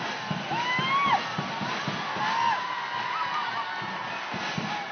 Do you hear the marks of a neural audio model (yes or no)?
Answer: no